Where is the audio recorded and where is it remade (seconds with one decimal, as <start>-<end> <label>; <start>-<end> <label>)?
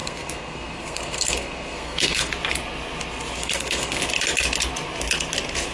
0.0-2.3 remade; 2.3-3.4 recorded; 3.4-4.0 remade; 4.0-5.7 recorded